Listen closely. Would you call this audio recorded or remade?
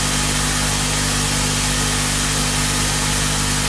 recorded